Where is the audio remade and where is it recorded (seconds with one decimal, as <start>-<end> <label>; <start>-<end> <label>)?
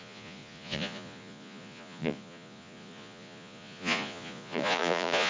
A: 0.0-5.3 remade